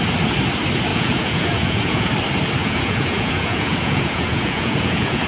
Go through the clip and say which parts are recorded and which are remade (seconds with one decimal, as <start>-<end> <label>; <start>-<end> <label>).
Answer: 0.0-0.9 recorded; 0.9-2.1 remade; 2.1-2.6 recorded; 2.6-5.3 remade